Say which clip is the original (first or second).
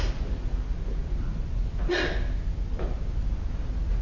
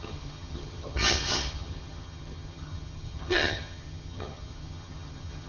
first